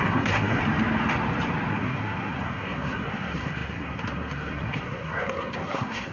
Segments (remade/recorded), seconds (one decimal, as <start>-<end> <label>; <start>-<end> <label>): 0.0-0.6 remade; 0.6-1.7 recorded; 1.7-6.1 remade